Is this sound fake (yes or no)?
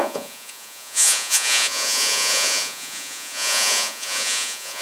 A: yes